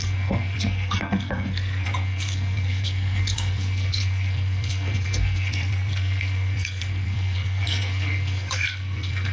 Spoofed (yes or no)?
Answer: yes